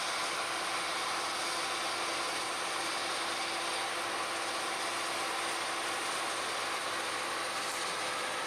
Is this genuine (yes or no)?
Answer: yes